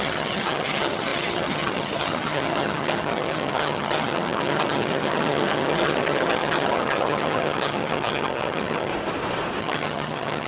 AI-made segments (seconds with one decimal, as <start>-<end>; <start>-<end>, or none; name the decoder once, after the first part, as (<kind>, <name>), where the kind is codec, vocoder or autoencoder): 0.0-8.9 (vocoder, HiFi-GAN); 9.6-10.5